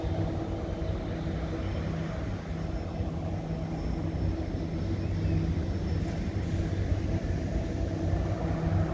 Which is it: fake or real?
real